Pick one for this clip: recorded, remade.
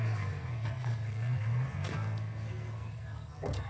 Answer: remade